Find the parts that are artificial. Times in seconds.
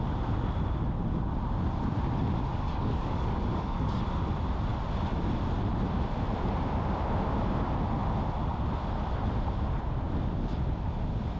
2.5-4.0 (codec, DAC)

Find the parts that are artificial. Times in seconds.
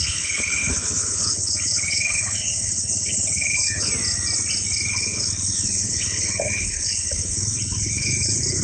0.0-3.9 (codec, HILCodec); 4.9-8.6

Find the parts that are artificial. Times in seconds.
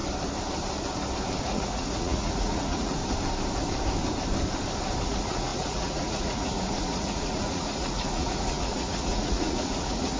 1.4-3.0 (vocoder, Vocos); 5.1-10.2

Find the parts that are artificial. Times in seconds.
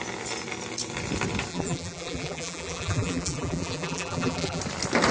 1.5-4.6 (vocoder, BigVGAN v2)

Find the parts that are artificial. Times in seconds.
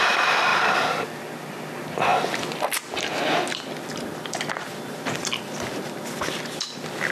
none